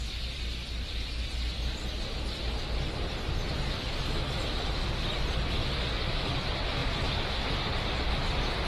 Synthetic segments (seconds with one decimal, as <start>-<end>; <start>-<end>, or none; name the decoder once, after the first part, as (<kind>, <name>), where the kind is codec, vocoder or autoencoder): none